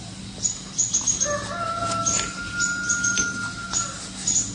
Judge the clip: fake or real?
real